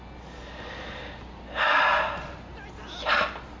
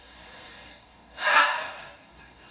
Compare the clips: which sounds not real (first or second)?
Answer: second